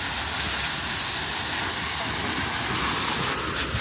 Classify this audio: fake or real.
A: real